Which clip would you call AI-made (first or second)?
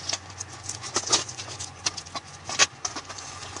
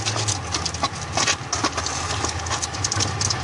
first